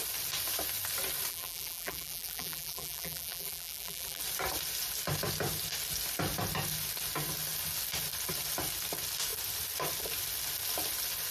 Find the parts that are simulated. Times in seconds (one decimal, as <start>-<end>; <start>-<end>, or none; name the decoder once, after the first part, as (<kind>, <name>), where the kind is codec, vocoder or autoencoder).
1.3-4.2 (vocoder, BigVGAN v2)